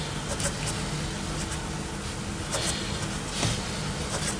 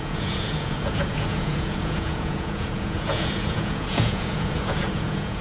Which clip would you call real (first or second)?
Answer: first